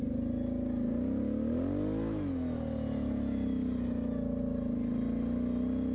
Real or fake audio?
real